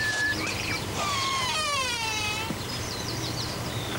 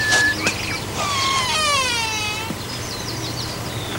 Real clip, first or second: second